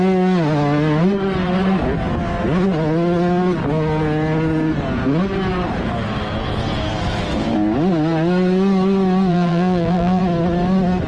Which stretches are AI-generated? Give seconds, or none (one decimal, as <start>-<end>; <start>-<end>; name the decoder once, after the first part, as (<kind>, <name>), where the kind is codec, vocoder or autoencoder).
9.3-10.2 (vocoder, BigVGAN v2)